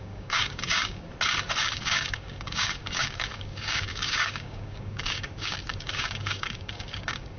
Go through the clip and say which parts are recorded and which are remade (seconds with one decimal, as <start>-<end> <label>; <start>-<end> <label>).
0.0-1.1 remade; 1.1-1.6 recorded; 1.6-7.4 remade